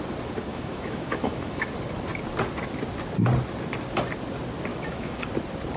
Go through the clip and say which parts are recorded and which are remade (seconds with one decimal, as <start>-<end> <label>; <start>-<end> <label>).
0.0-0.5 recorded; 0.5-1.7 remade; 1.7-4.7 recorded; 4.7-5.2 remade; 5.2-5.8 recorded